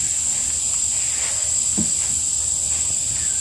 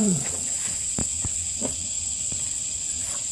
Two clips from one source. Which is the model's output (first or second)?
second